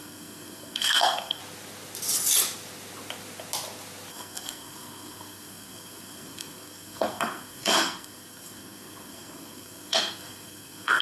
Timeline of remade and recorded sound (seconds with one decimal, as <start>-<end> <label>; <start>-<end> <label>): 0.0-1.4 remade; 1.4-4.1 recorded; 4.1-11.0 remade